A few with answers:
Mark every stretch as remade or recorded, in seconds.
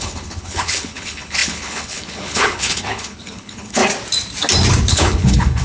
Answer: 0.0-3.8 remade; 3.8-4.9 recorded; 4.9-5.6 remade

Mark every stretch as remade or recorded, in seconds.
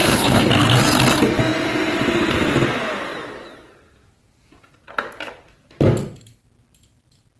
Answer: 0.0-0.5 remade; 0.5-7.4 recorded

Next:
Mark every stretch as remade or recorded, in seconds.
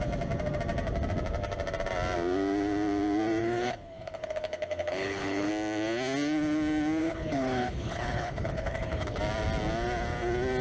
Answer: 0.0-3.4 recorded; 3.4-5.5 remade; 5.5-7.0 recorded; 7.0-9.2 remade; 9.2-10.6 recorded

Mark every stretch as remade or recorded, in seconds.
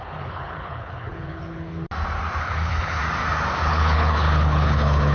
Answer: 0.0-1.8 remade; 1.8-2.4 recorded; 2.4-3.0 remade; 3.0-3.6 recorded; 3.6-5.1 remade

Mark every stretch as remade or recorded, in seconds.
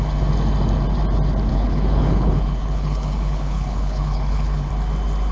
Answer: 0.0-1.5 recorded; 1.5-4.7 remade; 4.7-5.3 recorded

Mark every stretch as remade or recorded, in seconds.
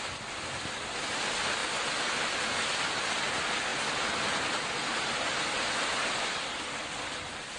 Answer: 0.0-7.6 recorded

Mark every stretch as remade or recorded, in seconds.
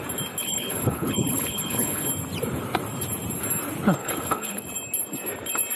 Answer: 0.0-0.4 recorded; 0.4-2.1 remade; 2.1-4.0 recorded; 4.0-4.6 remade; 4.6-5.8 recorded